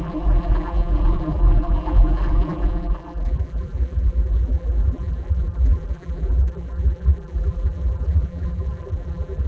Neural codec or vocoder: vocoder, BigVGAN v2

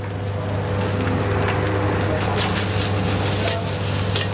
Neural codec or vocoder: none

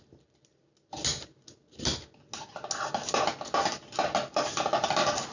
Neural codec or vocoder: none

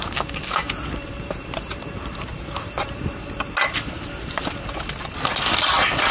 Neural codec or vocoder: none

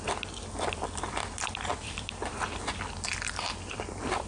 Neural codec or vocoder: vocoder, BigVGAN v2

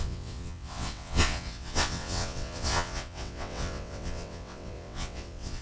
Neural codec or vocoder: vocoder, WaveNeXt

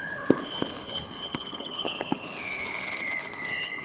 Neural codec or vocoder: codec, HILCodec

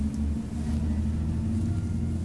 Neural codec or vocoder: none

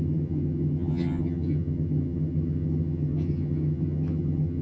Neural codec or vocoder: vocoder, HiFi-GAN